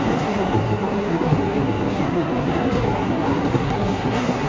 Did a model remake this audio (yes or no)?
yes